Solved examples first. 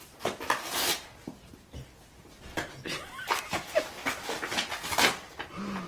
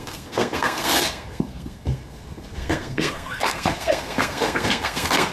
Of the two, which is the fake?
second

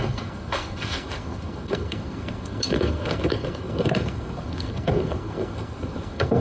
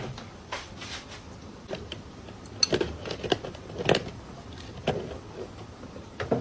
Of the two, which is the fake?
first